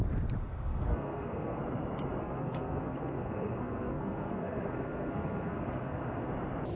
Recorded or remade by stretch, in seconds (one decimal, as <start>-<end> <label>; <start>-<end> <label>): 0.0-0.4 recorded; 0.4-1.6 remade; 1.6-2.2 recorded; 2.2-6.3 remade; 6.3-6.8 recorded